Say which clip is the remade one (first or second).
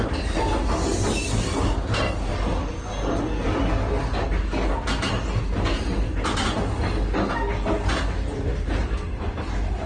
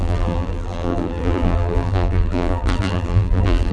second